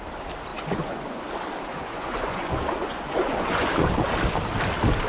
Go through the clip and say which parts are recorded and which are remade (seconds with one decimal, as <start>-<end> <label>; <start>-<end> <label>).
0.0-0.5 recorded; 0.5-1.2 remade; 1.2-1.7 recorded; 1.7-3.9 remade; 3.9-5.1 recorded